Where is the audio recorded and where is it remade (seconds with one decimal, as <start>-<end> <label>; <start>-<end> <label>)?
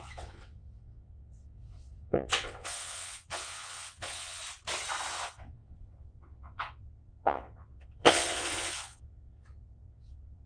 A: 0.0-4.4 remade; 4.4-5.1 recorded; 5.1-10.5 remade